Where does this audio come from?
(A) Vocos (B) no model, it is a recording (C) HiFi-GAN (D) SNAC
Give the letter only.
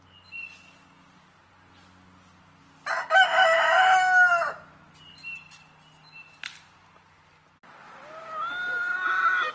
B